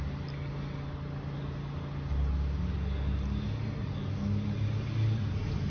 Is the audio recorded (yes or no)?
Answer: yes